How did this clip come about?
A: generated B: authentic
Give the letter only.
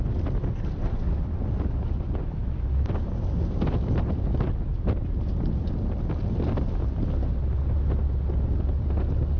B